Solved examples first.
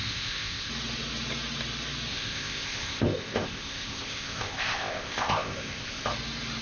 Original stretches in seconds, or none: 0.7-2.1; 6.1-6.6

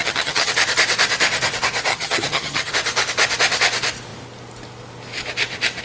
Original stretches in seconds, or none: 0.5-1.9; 2.7-5.8

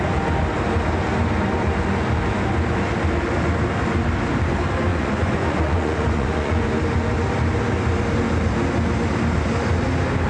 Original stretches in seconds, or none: 0.0-4.9; 6.7-10.3

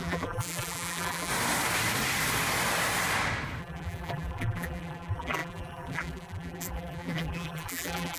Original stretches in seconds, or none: 1.3-3.6

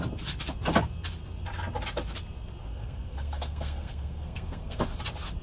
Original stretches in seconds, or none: 0.0-2.7; 4.8-5.4